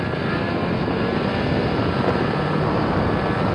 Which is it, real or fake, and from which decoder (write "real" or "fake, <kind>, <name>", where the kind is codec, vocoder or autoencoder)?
real